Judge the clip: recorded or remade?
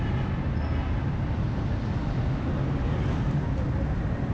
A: recorded